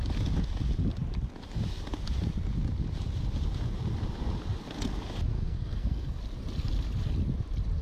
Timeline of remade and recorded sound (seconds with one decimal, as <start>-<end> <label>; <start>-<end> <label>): 0.0-5.3 recorded; 5.3-6.2 remade; 6.2-7.8 recorded